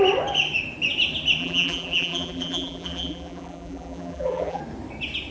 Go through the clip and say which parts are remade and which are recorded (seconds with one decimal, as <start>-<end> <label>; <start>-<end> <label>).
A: 0.0-1.4 recorded; 1.4-4.6 remade; 4.6-5.3 recorded